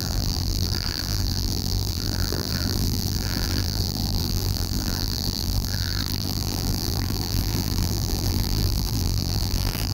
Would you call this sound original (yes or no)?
no